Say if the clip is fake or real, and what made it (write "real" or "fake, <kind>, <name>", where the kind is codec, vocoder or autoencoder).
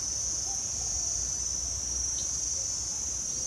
real